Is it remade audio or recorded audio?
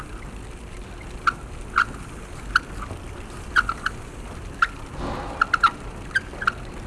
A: recorded